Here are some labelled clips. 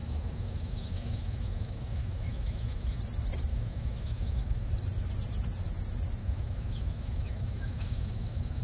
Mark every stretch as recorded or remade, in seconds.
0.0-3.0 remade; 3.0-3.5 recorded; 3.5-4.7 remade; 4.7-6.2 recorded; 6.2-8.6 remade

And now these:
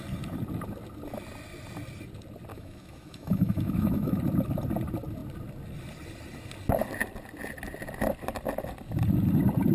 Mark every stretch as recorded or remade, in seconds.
0.0-2.5 recorded; 2.5-4.2 remade; 4.2-9.7 recorded

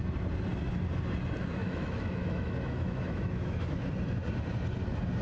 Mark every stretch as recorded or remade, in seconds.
0.0-1.6 recorded; 1.6-3.9 remade; 3.9-5.2 recorded

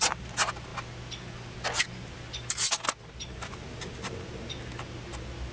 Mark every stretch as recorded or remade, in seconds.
0.0-5.5 recorded

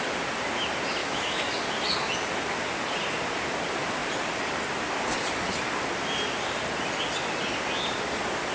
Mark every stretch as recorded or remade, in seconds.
0.0-1.0 recorded; 1.0-1.5 remade; 1.5-8.5 recorded

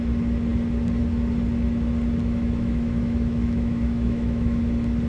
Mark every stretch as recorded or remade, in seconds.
0.0-2.2 recorded; 2.2-4.6 remade; 4.6-5.1 recorded

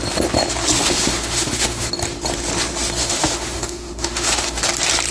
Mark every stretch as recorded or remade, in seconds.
0.0-0.8 recorded; 0.8-1.9 remade; 1.9-3.0 recorded; 3.0-4.6 remade; 4.6-5.1 recorded